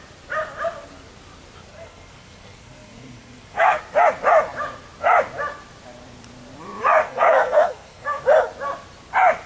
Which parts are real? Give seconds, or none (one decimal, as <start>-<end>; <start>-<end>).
0.0-1.7; 3.8-7.0; 8.2-9.5